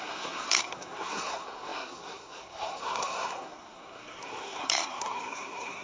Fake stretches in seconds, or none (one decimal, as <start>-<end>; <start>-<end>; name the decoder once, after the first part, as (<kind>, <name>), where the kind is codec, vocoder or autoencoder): 0.0-5.8 (codec, SNAC)